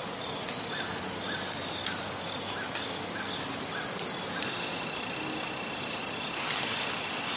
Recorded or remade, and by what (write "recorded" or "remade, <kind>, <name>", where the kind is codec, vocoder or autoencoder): recorded